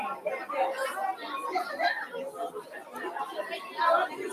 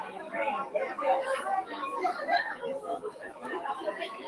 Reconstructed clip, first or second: second